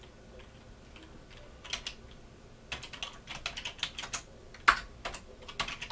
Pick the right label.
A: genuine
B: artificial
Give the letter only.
A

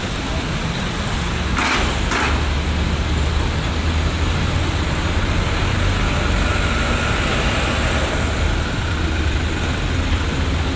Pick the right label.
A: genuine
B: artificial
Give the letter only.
A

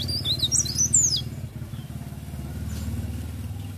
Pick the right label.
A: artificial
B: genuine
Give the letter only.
B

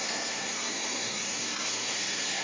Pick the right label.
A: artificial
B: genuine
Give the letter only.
A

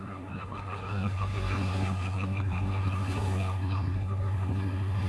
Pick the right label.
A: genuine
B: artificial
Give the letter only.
B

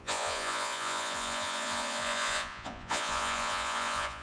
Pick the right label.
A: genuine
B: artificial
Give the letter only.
B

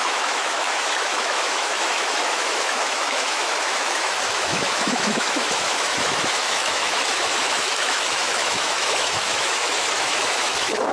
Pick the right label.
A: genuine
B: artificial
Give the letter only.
B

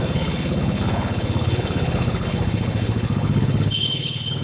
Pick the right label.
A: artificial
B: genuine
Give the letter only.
A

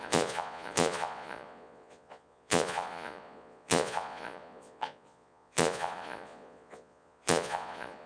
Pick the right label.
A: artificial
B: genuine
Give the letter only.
A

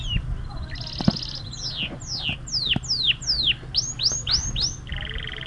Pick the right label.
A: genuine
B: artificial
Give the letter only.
A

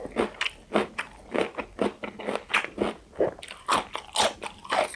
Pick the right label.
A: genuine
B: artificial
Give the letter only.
A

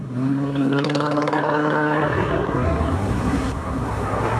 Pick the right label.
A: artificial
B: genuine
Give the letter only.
A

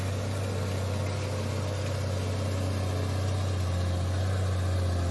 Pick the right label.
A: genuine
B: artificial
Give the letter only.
A